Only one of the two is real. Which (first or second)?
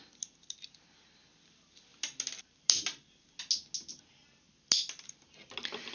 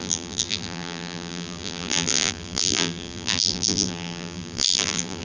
first